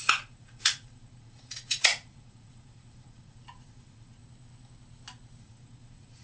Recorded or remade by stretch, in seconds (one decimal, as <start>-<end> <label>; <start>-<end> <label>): 0.0-4.2 remade; 4.2-5.4 recorded; 5.4-6.2 remade

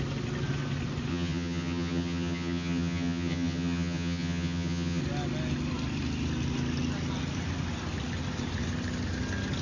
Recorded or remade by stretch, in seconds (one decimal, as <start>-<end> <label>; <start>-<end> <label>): 0.0-1.1 recorded; 1.1-5.0 remade; 5.0-9.6 recorded

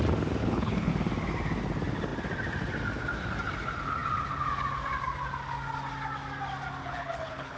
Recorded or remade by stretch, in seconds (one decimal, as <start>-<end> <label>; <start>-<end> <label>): 0.0-0.4 recorded; 0.4-0.9 remade; 0.9-6.8 recorded; 6.8-7.6 remade

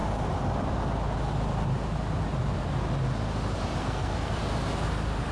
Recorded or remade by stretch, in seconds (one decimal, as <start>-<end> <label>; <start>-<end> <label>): 0.0-3.8 recorded; 3.8-4.4 remade; 4.4-5.3 recorded

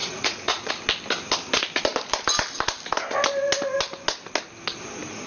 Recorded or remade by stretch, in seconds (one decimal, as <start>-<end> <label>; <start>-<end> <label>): 0.0-0.7 remade; 0.7-5.3 recorded

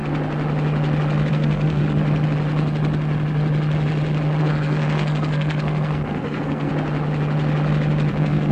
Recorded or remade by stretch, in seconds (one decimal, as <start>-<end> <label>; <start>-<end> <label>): 0.0-1.3 recorded; 1.3-1.8 remade; 1.8-4.4 recorded; 4.4-6.7 remade; 6.7-8.1 recorded; 8.1-8.5 remade

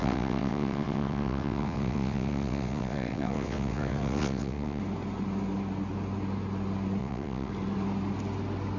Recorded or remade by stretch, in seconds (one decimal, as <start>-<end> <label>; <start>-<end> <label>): 0.0-4.8 remade; 4.8-7.0 recorded; 7.0-7.5 remade; 7.5-8.8 recorded

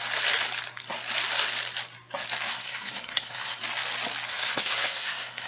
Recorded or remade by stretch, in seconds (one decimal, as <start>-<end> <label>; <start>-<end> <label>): 0.0-2.5 recorded; 2.5-3.6 remade; 3.6-4.3 recorded; 4.3-5.5 remade